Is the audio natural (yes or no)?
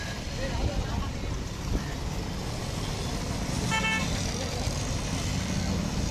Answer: yes